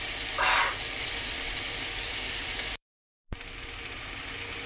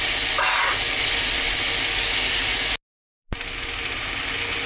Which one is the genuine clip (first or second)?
second